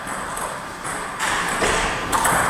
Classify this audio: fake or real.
fake